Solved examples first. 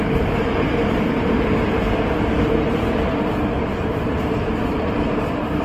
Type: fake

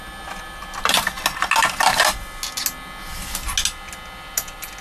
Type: real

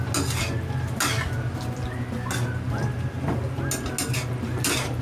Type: real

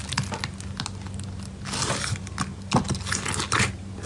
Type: real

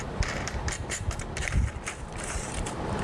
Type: fake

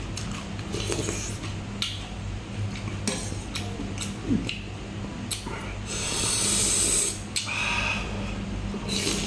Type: real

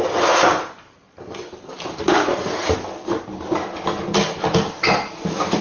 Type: real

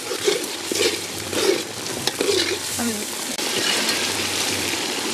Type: fake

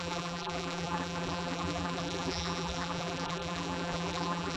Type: fake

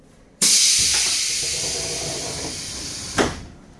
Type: fake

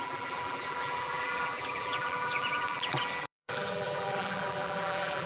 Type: fake